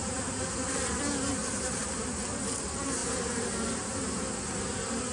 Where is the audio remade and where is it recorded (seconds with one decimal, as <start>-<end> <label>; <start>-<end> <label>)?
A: 0.0-0.7 remade; 0.7-1.4 recorded; 1.4-2.1 remade; 2.1-3.0 recorded; 3.0-4.2 remade; 4.2-5.1 recorded